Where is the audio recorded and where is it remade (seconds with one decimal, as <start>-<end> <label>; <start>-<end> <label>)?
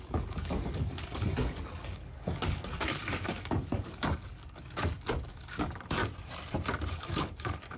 0.0-6.0 remade; 6.0-6.9 recorded; 6.9-7.8 remade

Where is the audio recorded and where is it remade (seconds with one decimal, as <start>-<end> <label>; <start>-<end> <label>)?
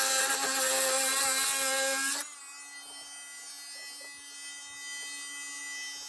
0.0-6.1 recorded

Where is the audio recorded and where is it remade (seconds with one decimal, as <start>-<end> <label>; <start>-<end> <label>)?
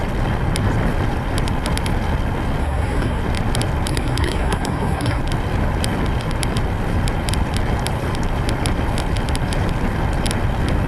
0.0-2.6 recorded; 2.6-3.2 remade; 3.2-3.9 recorded; 3.9-5.2 remade; 5.2-10.9 recorded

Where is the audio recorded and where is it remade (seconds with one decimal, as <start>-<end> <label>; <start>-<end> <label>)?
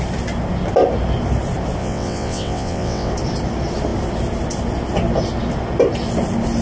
0.0-1.8 recorded; 1.8-3.1 remade; 3.1-6.6 recorded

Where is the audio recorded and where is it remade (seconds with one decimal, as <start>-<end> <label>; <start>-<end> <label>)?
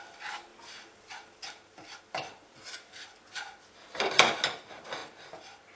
0.0-5.8 recorded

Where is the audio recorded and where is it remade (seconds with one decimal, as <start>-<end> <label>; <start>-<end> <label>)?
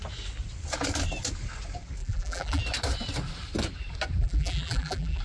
0.0-2.0 recorded; 2.0-2.6 remade; 2.6-4.2 recorded; 4.2-5.2 remade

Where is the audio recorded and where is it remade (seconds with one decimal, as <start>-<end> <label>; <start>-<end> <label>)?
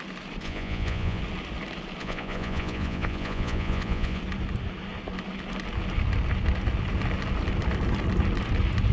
0.0-0.4 recorded; 0.4-1.2 remade; 1.2-2.0 recorded; 2.0-4.2 remade; 4.2-8.9 recorded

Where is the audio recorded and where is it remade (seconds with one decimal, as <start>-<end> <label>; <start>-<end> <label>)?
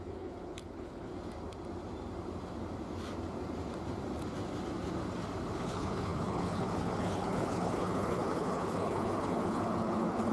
0.0-1.1 remade; 1.1-5.6 recorded; 5.6-10.3 remade